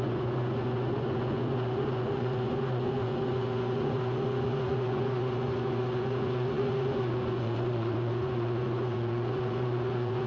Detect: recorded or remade remade